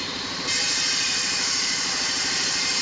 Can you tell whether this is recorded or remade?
remade